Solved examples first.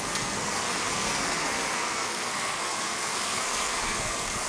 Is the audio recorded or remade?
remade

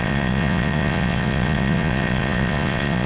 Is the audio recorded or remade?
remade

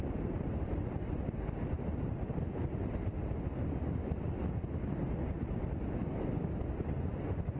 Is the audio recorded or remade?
recorded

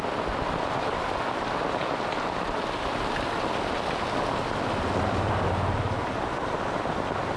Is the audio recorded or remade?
recorded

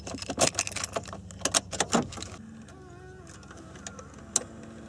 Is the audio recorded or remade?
recorded